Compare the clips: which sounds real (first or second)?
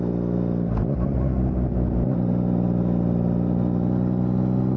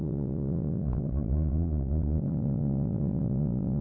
first